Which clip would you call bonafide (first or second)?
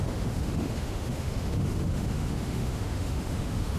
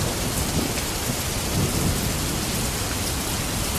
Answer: second